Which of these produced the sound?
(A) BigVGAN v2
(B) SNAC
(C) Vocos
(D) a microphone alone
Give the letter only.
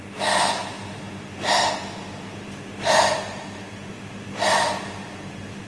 D